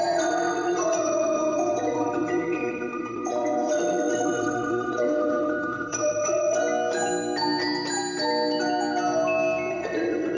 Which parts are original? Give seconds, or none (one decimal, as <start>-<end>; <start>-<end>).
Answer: 6.6-9.7